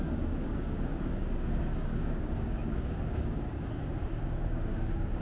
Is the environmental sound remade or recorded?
remade